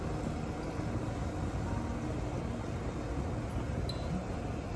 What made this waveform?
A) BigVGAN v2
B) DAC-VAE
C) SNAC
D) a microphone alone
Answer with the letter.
D